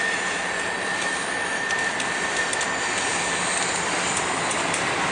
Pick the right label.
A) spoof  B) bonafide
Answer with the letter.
A